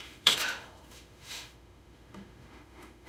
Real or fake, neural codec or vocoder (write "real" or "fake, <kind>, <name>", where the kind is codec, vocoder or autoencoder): fake, autoencoder, DAC-VAE